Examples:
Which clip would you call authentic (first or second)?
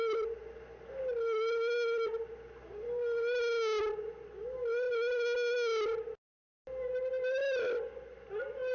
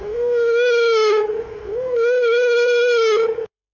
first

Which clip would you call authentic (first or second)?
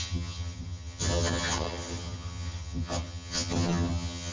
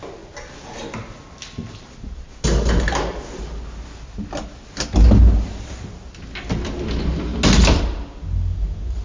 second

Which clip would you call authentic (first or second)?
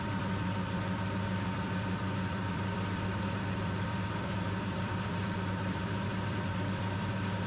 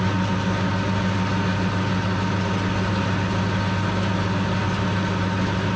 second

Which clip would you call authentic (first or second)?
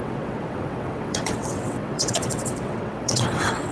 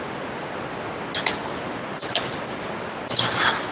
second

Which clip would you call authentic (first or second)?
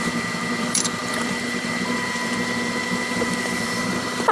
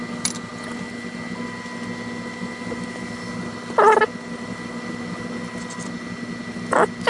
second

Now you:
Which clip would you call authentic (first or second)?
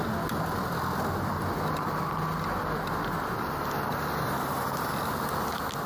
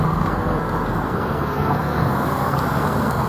first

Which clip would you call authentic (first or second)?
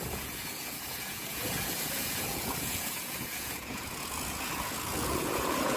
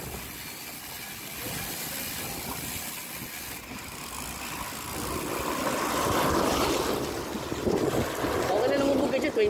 second